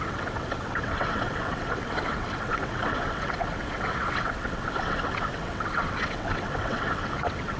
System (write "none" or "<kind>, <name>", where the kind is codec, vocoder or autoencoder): vocoder, WaveNeXt